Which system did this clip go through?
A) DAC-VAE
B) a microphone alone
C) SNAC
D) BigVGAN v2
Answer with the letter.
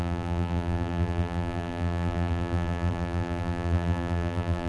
D